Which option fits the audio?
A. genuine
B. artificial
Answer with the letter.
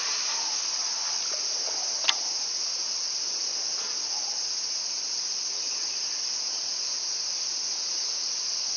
A